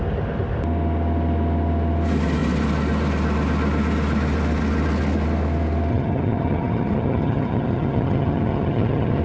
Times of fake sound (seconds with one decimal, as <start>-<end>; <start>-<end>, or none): 5.9-9.2